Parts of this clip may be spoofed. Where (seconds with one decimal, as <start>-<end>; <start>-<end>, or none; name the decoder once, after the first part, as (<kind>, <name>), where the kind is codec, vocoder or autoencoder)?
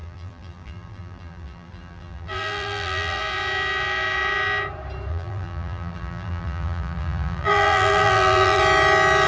0.0-3.2 (vocoder, BigVGAN v2); 5.1-8.6